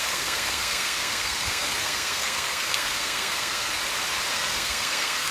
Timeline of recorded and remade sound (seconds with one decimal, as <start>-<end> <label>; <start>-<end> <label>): 0.0-3.8 remade; 3.8-4.3 recorded; 4.3-5.3 remade